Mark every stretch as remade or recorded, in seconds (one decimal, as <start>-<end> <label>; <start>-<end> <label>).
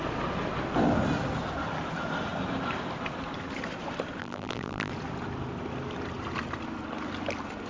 0.0-4.2 recorded; 4.2-4.9 remade; 4.9-7.7 recorded